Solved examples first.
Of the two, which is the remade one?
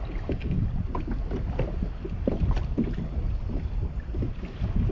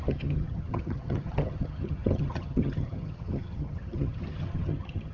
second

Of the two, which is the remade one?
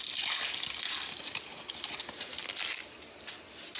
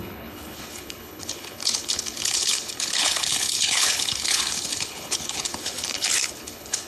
second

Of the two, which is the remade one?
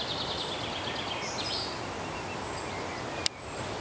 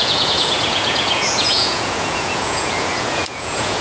second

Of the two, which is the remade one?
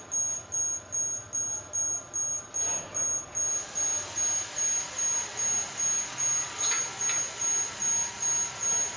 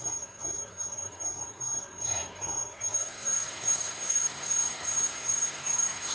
second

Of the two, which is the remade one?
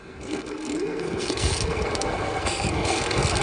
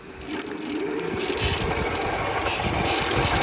first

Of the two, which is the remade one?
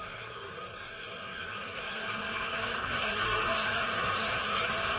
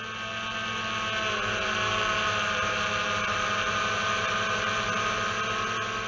first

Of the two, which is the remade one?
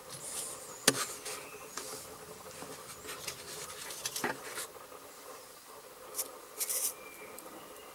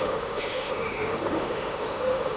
second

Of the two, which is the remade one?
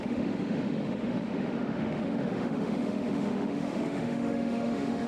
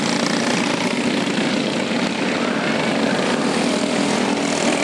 first